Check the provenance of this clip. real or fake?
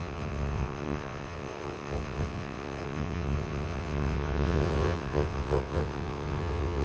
fake